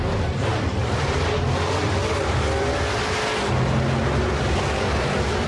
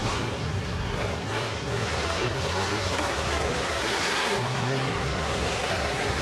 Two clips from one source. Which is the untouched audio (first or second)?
first